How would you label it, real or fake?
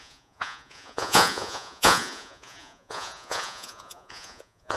fake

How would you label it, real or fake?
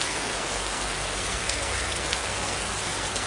fake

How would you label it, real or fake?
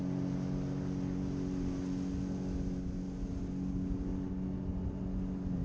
real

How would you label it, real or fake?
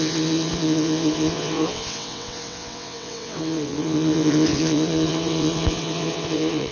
fake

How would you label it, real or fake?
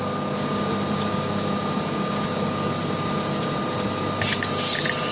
real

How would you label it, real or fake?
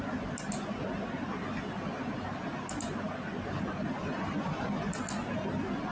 real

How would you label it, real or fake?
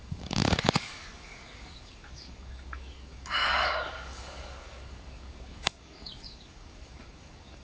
fake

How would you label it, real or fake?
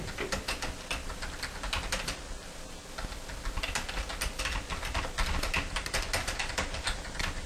real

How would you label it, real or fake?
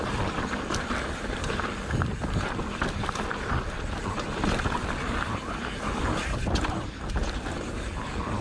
real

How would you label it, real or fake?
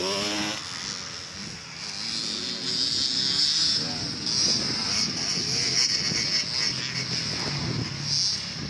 real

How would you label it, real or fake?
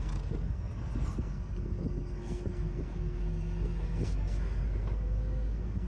fake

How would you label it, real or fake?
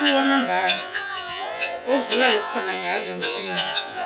fake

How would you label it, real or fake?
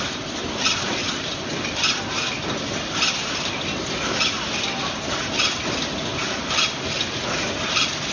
real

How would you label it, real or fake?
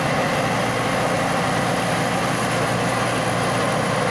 real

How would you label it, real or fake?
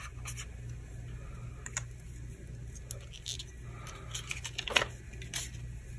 real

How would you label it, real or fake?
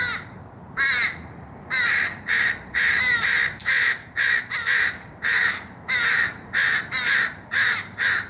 fake